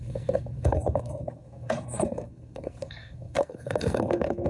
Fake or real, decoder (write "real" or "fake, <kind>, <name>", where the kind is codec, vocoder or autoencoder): fake, codec, SNAC